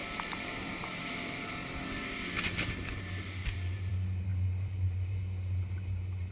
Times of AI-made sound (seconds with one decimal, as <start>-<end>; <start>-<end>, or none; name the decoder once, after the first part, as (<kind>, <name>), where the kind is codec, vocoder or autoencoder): 0.0-1.5 (vocoder, BigVGAN v2); 3.4-3.9; 4.3-5.2